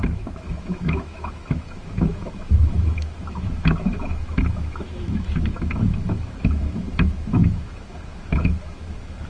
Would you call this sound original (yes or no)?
no